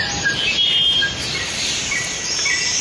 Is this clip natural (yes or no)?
yes